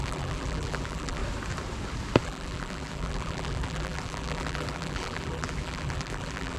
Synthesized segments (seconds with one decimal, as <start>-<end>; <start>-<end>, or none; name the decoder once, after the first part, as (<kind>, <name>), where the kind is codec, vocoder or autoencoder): 0.0-1.2 (vocoder, BigVGAN v2); 2.2-6.6